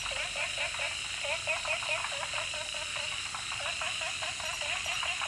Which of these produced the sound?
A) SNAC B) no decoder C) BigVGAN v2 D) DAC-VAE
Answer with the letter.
B